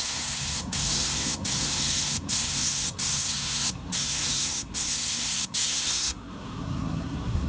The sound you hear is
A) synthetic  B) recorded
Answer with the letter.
A